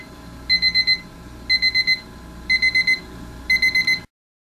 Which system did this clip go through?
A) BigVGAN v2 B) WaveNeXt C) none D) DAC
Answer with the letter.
C